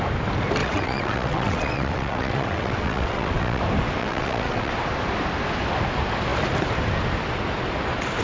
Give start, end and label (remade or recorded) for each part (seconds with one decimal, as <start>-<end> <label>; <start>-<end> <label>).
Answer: 0.0-0.6 recorded; 0.6-3.6 remade; 3.6-4.0 recorded; 4.0-4.7 remade; 4.7-8.2 recorded